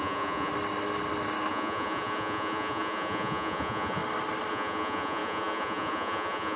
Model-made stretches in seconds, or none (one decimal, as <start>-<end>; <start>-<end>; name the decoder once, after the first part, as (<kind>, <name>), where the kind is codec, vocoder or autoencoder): 0.0-0.5 (vocoder, Vocos); 1.5-4.0; 4.5-6.6